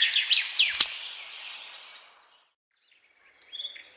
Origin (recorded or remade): recorded